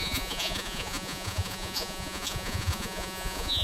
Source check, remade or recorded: remade